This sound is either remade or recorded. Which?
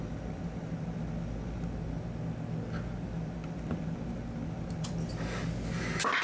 recorded